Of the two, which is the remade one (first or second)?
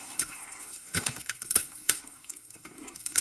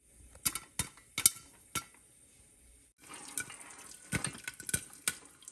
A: first